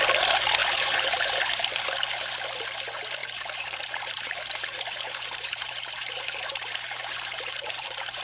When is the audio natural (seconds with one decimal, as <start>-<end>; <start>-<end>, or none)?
0.0-0.6; 1.8-3.2